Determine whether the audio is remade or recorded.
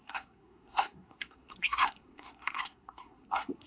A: remade